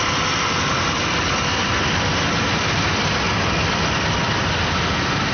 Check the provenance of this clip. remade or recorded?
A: recorded